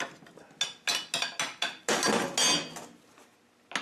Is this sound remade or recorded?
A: recorded